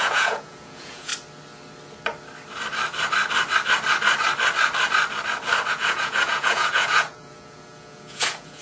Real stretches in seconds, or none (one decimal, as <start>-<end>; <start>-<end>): 1.1-5.7